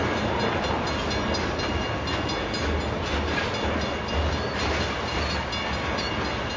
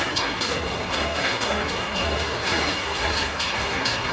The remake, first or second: second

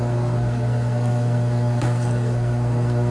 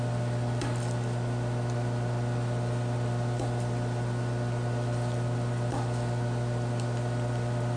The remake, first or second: first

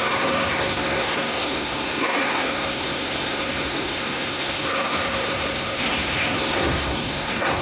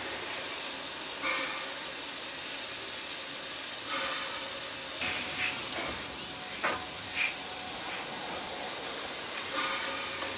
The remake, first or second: first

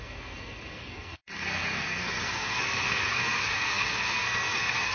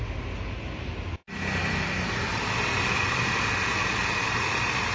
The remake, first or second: first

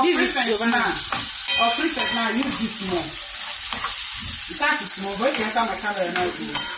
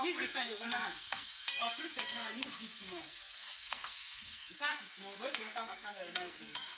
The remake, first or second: second